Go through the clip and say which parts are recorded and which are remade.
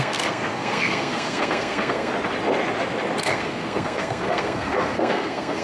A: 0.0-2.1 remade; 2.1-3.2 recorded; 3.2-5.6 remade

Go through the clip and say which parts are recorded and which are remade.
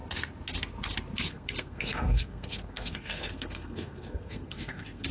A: 0.0-1.3 recorded; 1.3-5.1 remade